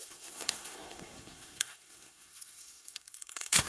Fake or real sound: fake